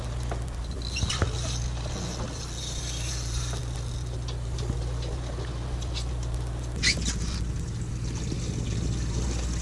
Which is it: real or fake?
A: real